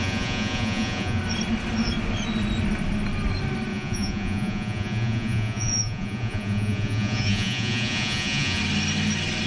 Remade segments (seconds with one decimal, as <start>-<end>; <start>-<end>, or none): 0.0-1.2; 3.7-8.6